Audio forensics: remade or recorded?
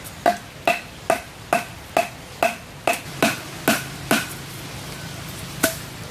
recorded